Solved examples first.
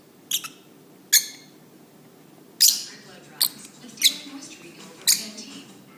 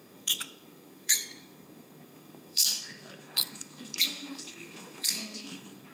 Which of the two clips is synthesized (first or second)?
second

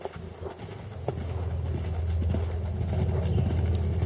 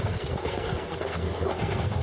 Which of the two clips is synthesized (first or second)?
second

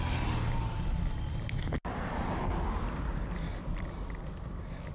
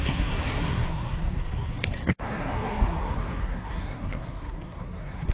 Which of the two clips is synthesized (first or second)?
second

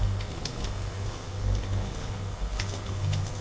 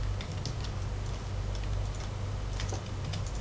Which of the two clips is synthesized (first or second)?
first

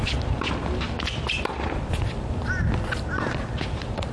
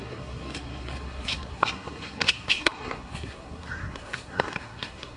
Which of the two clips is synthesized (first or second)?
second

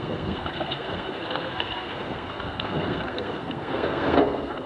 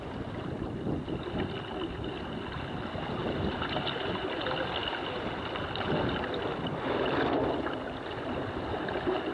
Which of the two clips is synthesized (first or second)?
first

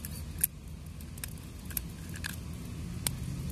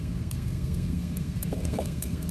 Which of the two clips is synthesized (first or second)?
second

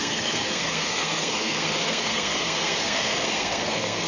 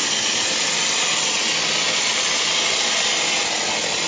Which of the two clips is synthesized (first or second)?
first